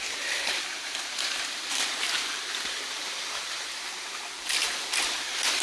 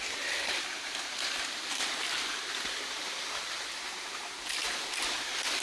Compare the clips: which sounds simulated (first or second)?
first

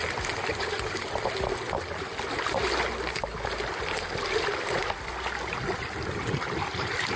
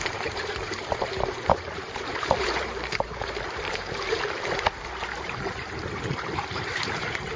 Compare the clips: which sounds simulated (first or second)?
second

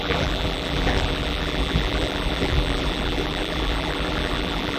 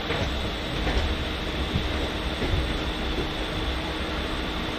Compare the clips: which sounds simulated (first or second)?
first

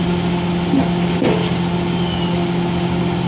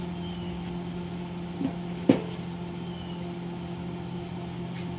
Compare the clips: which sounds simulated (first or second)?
second